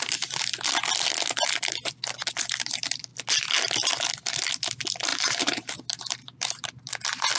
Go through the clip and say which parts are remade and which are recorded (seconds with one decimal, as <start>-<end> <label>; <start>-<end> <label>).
0.0-5.1 recorded; 5.1-5.7 remade; 5.7-6.2 recorded; 6.2-6.9 remade; 6.9-7.4 recorded

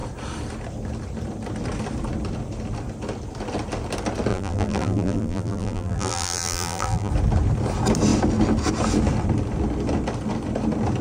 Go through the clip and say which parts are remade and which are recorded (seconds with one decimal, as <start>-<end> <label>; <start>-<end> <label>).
0.0-4.3 recorded; 4.3-7.1 remade; 7.1-11.0 recorded